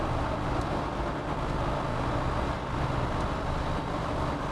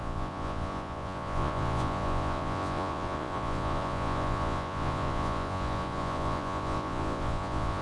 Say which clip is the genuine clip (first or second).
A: first